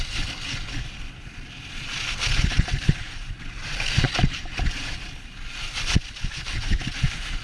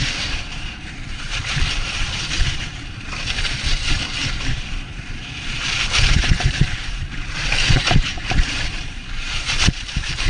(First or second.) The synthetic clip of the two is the second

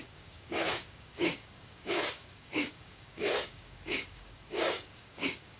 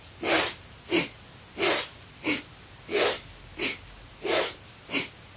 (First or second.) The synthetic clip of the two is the first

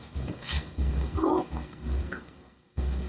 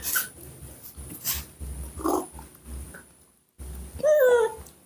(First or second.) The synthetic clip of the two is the first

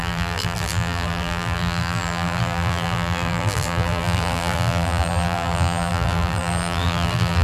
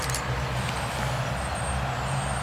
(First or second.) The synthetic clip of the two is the first